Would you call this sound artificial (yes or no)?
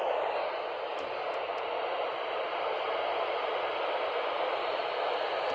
no